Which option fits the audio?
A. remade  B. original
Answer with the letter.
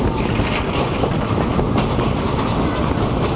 B